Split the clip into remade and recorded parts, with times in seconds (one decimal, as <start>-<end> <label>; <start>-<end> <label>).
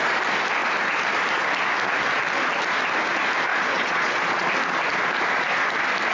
0.0-3.5 recorded; 3.5-4.5 remade; 4.5-6.1 recorded